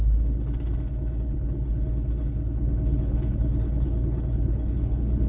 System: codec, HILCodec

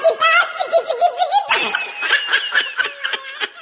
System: none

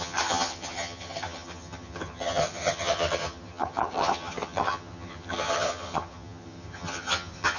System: vocoder, HiFi-GAN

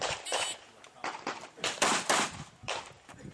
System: none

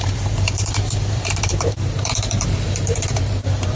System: vocoder, BigVGAN v2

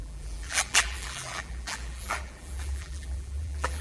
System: vocoder, BigVGAN v2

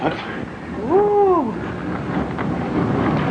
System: none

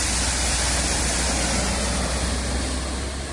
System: none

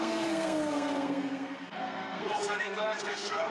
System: codec, SNAC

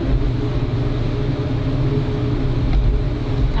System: none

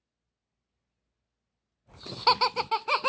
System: none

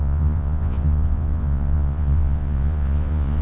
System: vocoder, Vocos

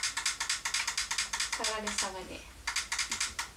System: none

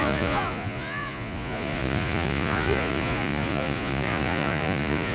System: vocoder, Vocos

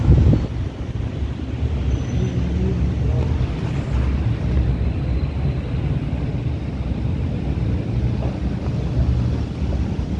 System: none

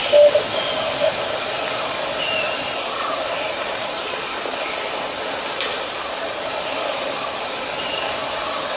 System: none